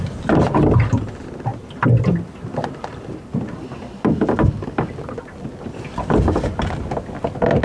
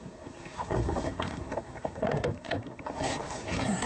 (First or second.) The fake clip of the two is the second